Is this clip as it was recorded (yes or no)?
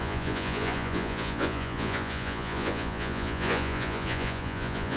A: no